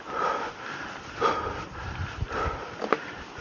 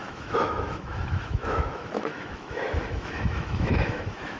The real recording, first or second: first